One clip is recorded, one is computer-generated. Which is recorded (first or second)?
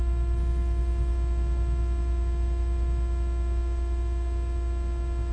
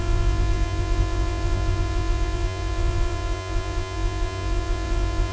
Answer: first